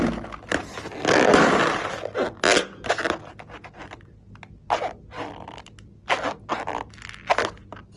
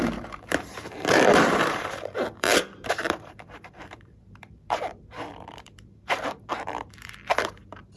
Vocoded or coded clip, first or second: second